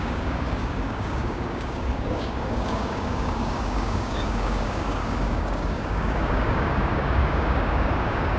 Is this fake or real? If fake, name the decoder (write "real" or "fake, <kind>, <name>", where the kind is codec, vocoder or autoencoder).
fake, codec, DAC